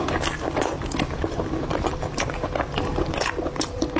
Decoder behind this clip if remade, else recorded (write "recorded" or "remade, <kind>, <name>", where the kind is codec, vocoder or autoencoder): remade, vocoder, BigVGAN v2